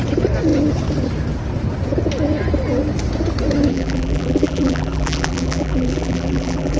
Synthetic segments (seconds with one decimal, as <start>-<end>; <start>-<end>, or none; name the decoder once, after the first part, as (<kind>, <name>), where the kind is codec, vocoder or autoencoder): 3.7-6.8 (vocoder, BigVGAN v2)